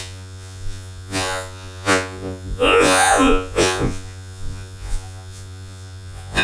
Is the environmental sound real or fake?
fake